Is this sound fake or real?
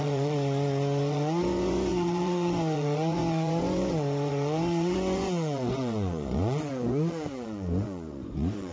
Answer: fake